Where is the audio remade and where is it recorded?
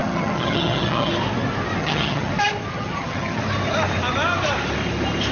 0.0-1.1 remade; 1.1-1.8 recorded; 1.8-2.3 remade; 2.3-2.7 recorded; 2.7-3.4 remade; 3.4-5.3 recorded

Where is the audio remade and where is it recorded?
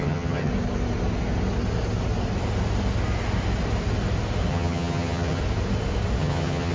0.0-0.5 remade; 0.5-4.5 recorded; 4.5-5.4 remade; 5.4-6.2 recorded; 6.2-6.7 remade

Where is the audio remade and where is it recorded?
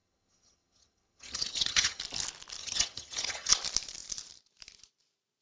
0.0-2.0 remade; 2.0-2.6 recorded; 2.6-3.5 remade; 3.5-5.4 recorded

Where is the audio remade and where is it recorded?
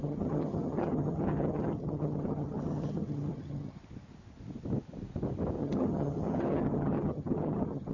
0.0-3.8 remade; 3.8-5.6 recorded; 5.6-7.9 remade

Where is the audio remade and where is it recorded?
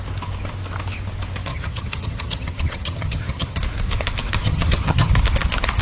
0.0-1.5 recorded; 1.5-3.6 remade; 3.6-4.4 recorded; 4.4-5.1 remade; 5.1-5.8 recorded